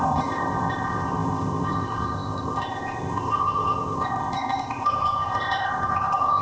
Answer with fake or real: fake